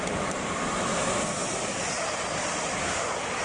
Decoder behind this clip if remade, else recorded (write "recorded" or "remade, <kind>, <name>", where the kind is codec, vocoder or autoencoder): remade, vocoder, BigVGAN v2